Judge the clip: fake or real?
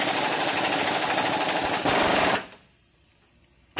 real